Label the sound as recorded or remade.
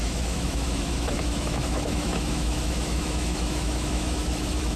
remade